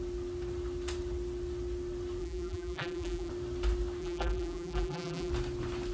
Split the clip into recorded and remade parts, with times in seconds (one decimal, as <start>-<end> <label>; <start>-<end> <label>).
0.0-2.2 recorded; 2.2-3.3 remade; 3.3-4.0 recorded; 4.0-5.3 remade; 5.3-5.9 recorded

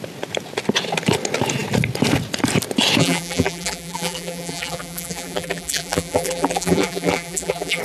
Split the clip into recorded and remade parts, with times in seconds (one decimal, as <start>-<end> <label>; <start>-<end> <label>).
0.0-3.0 recorded; 3.0-7.8 remade

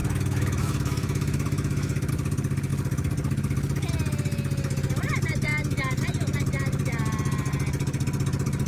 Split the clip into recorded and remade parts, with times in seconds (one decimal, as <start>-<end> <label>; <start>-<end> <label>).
0.0-2.1 remade; 2.1-8.7 recorded

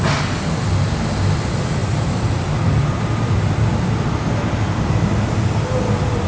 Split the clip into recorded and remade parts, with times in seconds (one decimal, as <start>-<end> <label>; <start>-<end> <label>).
0.0-6.3 recorded

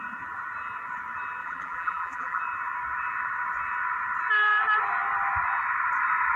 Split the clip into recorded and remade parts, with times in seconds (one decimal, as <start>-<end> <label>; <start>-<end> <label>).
0.0-1.4 recorded; 1.4-2.4 remade; 2.4-6.4 recorded

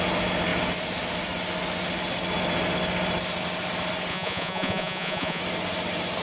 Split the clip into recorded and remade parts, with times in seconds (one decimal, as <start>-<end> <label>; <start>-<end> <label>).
0.0-4.1 recorded; 4.1-5.4 remade; 5.4-6.2 recorded

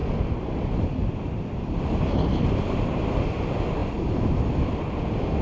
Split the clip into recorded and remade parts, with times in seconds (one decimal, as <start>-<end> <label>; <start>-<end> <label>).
0.0-5.4 recorded

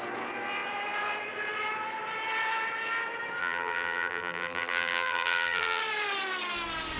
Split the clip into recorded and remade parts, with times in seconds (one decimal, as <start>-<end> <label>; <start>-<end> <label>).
0.0-3.4 recorded; 3.4-5.8 remade; 5.8-7.0 recorded